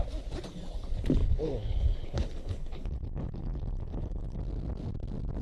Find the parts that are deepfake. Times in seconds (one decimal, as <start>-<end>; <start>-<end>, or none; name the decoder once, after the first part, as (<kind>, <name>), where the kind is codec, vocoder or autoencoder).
1.2-4.4 (codec, HILCodec)